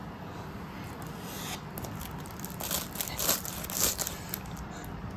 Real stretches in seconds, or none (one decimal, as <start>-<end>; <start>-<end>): 0.0-5.2